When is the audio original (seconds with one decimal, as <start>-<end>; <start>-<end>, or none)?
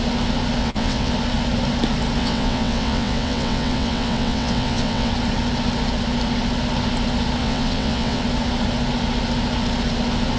0.0-0.6; 1.1-2.2; 5.1-7.4; 8.2-10.4